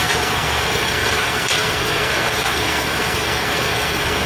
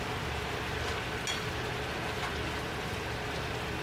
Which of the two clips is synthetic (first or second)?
first